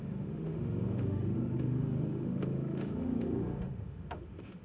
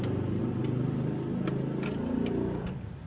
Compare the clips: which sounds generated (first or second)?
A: first